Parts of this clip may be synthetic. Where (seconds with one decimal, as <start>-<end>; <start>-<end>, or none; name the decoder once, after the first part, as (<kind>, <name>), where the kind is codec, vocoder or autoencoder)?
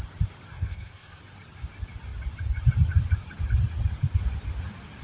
0.5-1.2 (codec, SNAC)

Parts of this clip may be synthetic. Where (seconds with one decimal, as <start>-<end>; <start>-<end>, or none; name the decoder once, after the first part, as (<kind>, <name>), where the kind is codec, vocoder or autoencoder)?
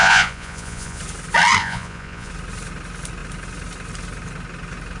0.0-1.0 (vocoder, Vocos); 1.6-2.3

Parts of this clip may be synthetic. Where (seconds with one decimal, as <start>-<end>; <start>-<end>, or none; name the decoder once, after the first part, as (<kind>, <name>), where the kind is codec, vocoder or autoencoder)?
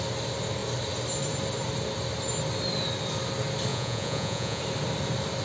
3.7-4.6 (vocoder, Vocos)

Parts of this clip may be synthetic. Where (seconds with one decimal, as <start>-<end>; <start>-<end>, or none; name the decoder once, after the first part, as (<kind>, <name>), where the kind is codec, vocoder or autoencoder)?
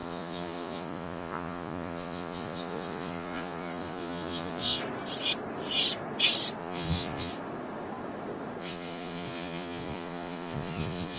0.0-4.8 (vocoder, Vocos); 6.6-7.3; 8.6-11.2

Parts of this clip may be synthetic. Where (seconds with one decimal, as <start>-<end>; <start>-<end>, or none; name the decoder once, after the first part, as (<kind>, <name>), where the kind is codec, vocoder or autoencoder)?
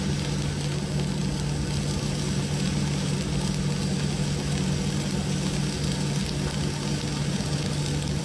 none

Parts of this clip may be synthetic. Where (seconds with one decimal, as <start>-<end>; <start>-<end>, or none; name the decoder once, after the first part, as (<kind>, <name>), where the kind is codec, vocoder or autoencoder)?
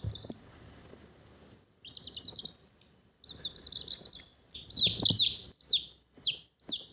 none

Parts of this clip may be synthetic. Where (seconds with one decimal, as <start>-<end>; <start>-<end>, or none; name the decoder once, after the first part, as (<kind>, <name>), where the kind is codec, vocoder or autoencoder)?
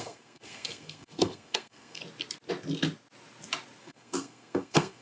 0.0-2.0 (codec, SNAC); 3.8-5.0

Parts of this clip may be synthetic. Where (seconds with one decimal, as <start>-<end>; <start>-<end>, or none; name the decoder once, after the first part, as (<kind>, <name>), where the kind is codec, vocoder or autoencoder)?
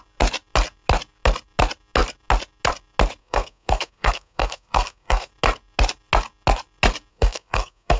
3.2-5.3 (codec, SNAC); 7.1-8.0